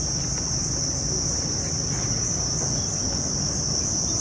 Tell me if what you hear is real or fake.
real